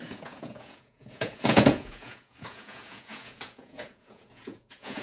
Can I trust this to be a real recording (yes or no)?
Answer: no